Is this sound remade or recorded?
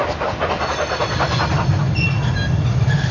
recorded